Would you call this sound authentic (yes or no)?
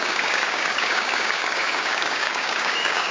no